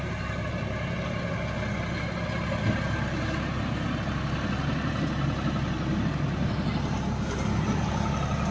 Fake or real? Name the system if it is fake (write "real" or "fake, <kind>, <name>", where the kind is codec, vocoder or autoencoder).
real